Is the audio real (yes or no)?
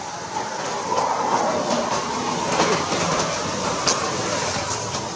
yes